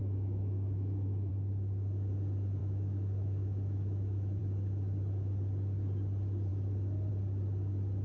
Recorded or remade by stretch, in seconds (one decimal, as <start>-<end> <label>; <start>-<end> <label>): 0.0-1.3 remade; 1.3-2.6 recorded; 2.6-4.4 remade; 4.4-8.0 recorded